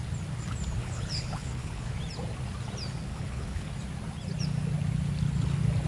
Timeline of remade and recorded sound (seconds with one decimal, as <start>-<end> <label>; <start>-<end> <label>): 0.0-0.8 recorded; 0.8-1.9 remade; 1.9-3.1 recorded; 3.1-3.7 remade; 3.7-5.9 recorded